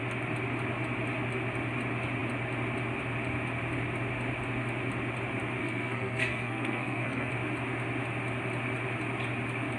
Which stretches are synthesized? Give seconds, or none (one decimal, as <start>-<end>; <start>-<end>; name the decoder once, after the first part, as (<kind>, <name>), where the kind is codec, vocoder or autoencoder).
5.6-7.3 (codec, SNAC)